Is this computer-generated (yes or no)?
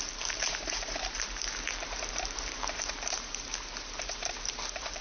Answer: yes